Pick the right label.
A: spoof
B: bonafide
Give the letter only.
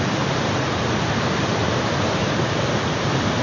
B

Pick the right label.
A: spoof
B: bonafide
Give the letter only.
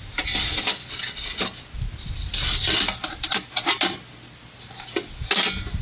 B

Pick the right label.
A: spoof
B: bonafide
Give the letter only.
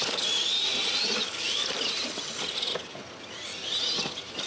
B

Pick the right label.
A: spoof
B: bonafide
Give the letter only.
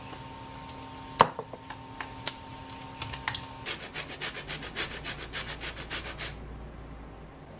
B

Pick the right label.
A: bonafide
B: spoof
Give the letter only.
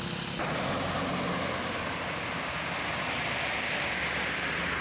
A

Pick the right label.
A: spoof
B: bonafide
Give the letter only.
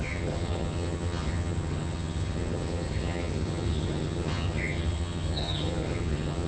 A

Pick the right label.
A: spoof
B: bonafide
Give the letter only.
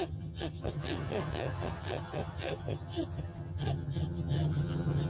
A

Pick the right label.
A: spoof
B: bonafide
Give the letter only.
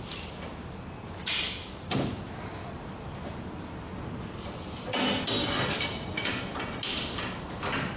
B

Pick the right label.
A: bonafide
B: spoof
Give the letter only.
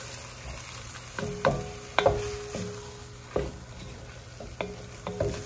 A